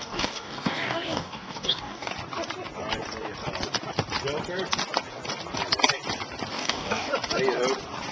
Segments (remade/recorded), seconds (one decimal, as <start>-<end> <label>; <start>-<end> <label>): 0.0-2.1 remade; 2.1-6.5 recorded; 6.5-7.1 remade; 7.1-8.1 recorded